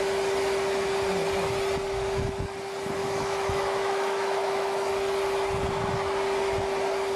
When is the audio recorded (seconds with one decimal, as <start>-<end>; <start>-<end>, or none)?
0.0-3.0; 4.9-7.2